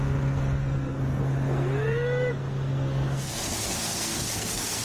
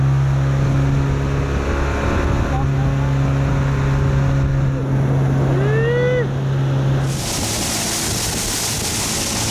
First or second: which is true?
second